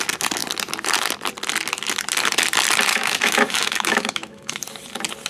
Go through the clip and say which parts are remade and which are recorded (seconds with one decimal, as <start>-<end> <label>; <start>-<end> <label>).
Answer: 0.0-2.9 recorded; 2.9-4.6 remade; 4.6-5.3 recorded